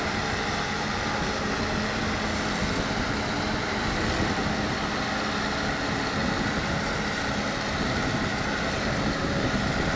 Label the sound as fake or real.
real